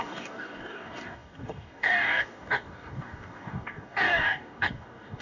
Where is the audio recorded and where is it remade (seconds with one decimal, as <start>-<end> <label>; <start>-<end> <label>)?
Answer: 0.0-5.2 remade